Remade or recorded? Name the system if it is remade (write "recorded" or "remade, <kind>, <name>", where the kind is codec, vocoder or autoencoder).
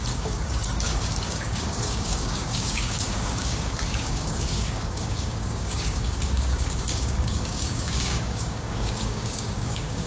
remade, codec, DAC